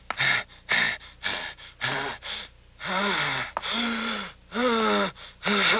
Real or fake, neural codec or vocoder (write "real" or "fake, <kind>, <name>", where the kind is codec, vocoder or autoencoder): real